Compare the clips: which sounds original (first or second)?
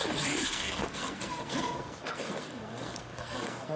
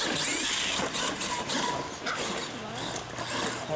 second